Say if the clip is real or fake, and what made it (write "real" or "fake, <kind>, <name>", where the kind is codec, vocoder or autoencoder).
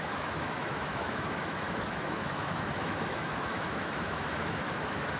fake, autoencoder, DAC-VAE